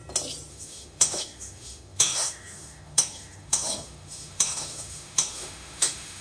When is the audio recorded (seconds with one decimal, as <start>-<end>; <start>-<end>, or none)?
0.0-0.5